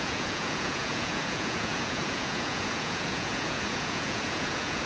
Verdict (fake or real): fake